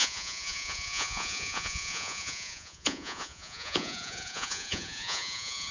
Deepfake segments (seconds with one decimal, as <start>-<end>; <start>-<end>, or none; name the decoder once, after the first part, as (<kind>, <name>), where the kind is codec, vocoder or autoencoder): 0.0-5.7 (vocoder, Vocos)